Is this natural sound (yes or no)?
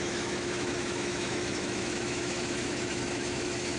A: no